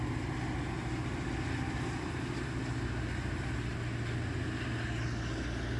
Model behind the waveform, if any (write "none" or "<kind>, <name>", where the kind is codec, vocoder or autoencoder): none